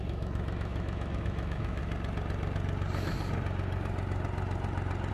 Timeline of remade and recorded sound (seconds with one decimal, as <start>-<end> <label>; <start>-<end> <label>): 0.0-1.8 remade; 1.8-5.1 recorded